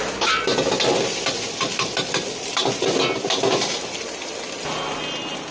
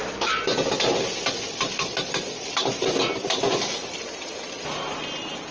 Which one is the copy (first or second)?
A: second